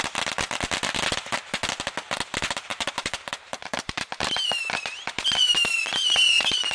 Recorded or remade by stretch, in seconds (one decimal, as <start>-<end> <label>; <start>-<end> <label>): 0.0-2.7 recorded; 2.7-6.3 remade; 6.3-6.7 recorded